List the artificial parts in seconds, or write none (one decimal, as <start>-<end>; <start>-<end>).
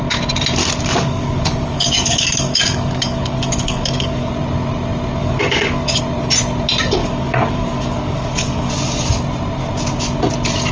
0.6-4.3; 5.2-6.0; 7.0-8.7